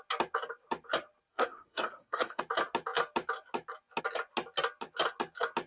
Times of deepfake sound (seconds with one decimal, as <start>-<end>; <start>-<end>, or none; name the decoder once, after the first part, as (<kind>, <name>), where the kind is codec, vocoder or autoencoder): 1.3-2.4 (codec, SNAC)